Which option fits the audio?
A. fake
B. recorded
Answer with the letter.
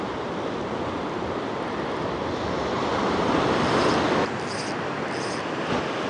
B